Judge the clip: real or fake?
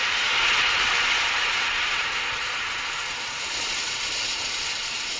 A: fake